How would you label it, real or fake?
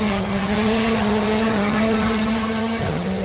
fake